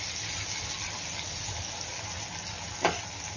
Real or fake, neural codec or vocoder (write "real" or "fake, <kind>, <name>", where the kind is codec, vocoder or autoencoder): real